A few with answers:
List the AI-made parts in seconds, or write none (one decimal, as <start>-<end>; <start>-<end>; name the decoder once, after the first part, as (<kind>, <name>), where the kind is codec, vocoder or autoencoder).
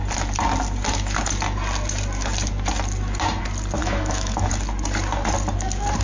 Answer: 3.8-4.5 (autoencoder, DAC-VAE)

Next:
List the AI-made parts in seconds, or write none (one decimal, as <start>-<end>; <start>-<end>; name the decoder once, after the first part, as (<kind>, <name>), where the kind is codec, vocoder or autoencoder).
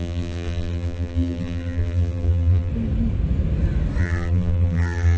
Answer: 0.0-2.7 (vocoder, BigVGAN v2); 4.0-5.2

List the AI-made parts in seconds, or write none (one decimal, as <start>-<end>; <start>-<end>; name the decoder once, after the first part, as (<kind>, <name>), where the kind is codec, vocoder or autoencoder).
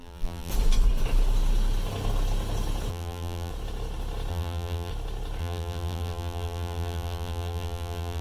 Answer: 0.0-0.5 (vocoder, BigVGAN v2); 2.9-3.5; 4.3-4.9; 5.4-8.2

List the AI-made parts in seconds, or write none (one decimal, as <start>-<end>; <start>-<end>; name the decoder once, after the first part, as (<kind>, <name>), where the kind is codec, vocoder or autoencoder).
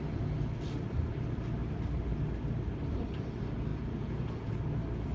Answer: 3.7-4.5 (vocoder, Vocos)